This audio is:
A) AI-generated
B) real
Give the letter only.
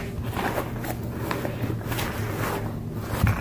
B